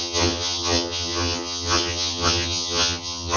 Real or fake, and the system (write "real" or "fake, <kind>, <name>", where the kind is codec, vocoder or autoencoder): fake, vocoder, HiFi-GAN